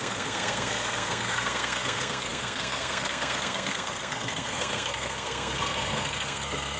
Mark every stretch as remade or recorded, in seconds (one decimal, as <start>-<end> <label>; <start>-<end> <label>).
0.0-6.8 remade